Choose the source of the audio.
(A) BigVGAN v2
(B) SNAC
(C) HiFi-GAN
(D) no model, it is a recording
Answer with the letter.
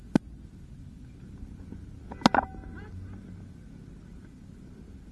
D